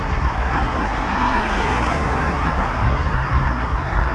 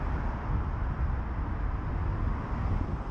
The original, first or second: second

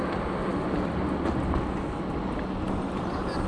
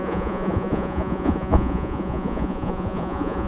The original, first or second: first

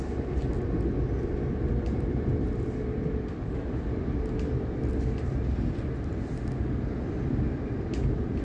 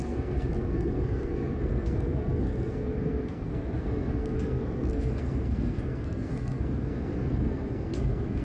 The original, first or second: first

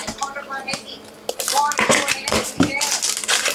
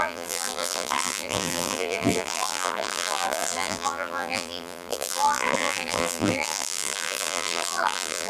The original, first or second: first